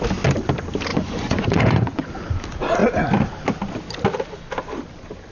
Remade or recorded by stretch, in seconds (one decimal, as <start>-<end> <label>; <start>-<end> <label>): 0.0-0.9 recorded; 0.9-2.1 remade; 2.1-5.3 recorded

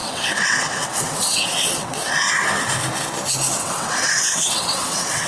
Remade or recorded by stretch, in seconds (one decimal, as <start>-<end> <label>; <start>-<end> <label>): 0.0-2.1 remade; 2.1-3.6 recorded; 3.6-5.3 remade

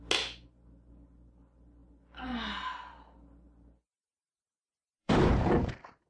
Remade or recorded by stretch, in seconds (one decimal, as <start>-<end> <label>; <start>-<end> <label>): 0.0-5.0 recorded; 5.0-6.1 remade

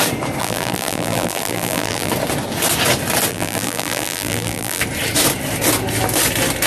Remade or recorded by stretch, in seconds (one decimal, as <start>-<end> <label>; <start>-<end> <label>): 0.0-0.4 recorded; 0.4-2.1 remade; 2.1-3.3 recorded; 3.3-4.8 remade; 4.8-6.7 recorded